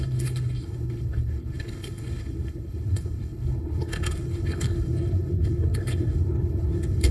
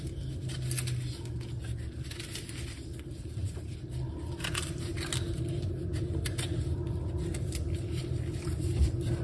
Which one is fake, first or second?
first